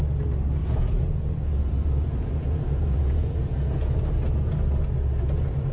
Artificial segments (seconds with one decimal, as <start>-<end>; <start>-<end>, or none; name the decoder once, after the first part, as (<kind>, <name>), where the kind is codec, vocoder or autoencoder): 0.6-4.0 (vocoder, Vocos)